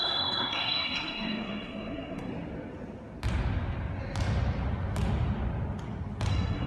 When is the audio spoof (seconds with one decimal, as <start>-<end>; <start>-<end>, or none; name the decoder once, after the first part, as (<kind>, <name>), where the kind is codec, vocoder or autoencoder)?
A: 0.0-2.3 (codec, SNAC); 6.3-6.7